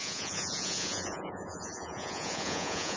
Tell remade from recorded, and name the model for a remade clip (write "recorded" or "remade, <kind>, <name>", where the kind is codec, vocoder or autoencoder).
remade, vocoder, Vocos